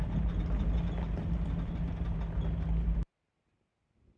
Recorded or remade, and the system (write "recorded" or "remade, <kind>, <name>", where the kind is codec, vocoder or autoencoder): recorded